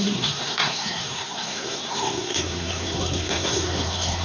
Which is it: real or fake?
fake